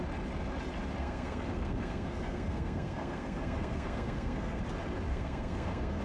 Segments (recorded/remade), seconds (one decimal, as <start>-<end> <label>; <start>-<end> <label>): 0.0-1.0 recorded; 1.0-4.6 remade; 4.6-5.1 recorded; 5.1-6.0 remade